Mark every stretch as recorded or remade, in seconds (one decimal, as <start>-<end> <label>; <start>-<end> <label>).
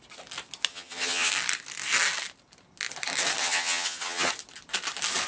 0.0-0.7 recorded; 0.7-1.3 remade; 1.3-3.4 recorded; 3.4-4.3 remade; 4.3-5.3 recorded